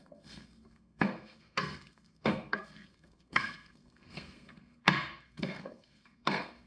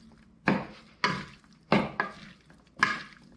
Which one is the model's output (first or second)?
first